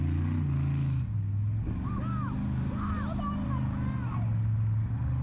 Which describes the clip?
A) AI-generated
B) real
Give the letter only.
B